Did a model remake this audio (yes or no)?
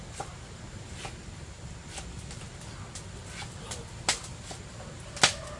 no